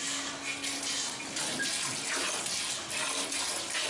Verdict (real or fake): real